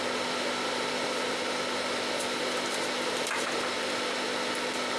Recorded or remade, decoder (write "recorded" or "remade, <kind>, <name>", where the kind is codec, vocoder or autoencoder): recorded